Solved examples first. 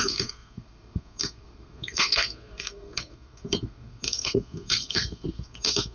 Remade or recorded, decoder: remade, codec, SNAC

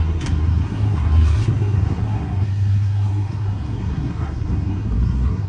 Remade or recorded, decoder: remade, codec, SNAC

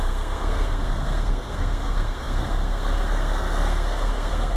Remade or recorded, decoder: remade, codec, SNAC